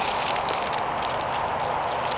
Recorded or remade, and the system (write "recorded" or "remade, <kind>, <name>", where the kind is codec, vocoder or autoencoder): recorded